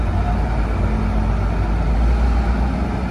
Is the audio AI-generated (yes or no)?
no